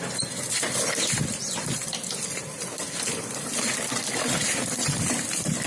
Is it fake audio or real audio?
fake